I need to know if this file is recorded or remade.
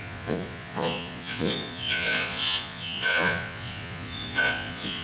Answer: remade